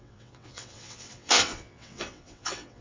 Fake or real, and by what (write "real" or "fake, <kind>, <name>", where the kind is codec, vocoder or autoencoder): fake, vocoder, WaveNeXt